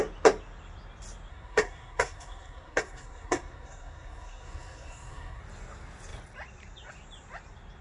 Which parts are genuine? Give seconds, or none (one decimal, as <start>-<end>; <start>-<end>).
0.0-1.3; 5.4-7.8

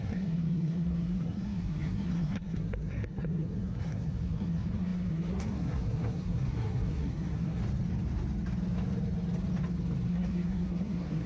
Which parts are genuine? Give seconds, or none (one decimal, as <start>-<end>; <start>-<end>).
7.6-10.1